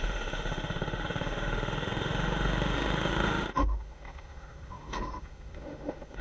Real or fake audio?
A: fake